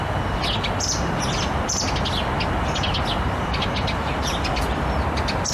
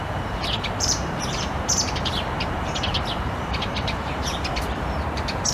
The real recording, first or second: first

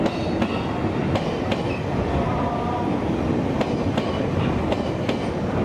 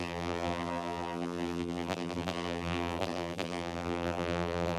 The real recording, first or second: first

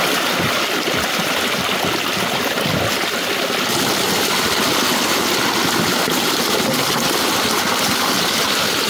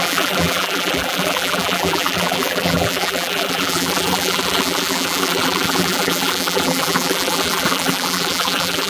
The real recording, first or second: first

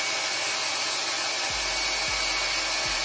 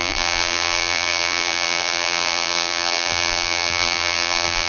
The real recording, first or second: first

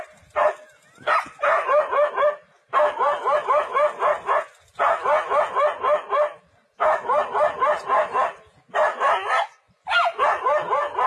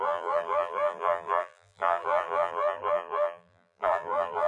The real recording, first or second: first